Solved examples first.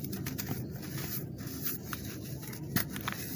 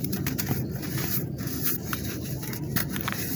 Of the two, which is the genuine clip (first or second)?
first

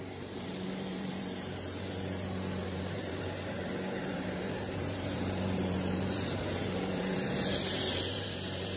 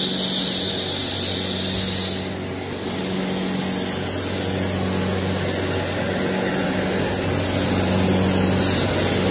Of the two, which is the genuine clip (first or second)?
second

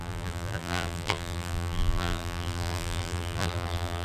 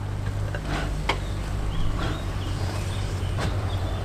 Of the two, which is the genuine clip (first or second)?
second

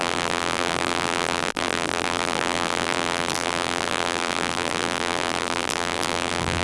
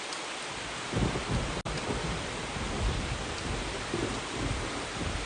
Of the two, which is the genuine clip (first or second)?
second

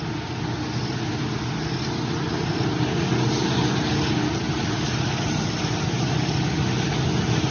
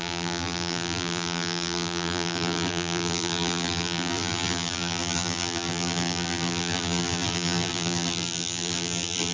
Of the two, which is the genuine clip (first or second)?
first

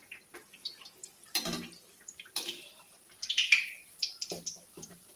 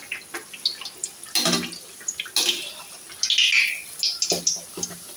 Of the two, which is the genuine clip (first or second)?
second